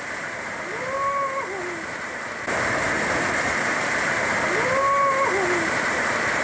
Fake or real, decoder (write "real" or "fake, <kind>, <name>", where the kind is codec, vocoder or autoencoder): real